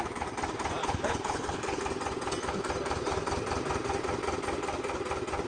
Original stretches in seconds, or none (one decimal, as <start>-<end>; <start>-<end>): 0.0-0.8; 1.8-5.5